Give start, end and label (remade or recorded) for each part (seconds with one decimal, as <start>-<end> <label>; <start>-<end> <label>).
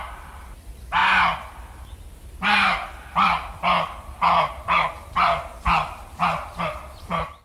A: 0.0-7.4 recorded